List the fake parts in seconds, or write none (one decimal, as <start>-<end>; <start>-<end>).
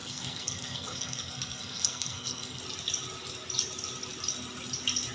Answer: 0.0-2.6